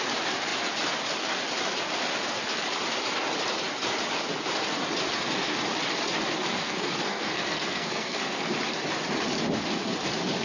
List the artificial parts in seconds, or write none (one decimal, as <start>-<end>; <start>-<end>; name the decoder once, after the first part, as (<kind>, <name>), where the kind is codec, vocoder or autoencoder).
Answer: 6.5-8.5 (codec, SNAC)